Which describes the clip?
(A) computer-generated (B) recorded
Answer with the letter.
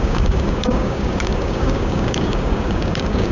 A